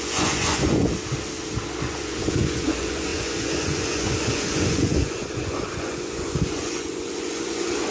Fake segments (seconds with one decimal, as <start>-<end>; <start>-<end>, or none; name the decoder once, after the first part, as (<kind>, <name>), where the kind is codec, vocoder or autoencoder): 0.0-0.9 (vocoder, Vocos); 1.8-7.9